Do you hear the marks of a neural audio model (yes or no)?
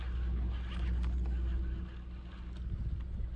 no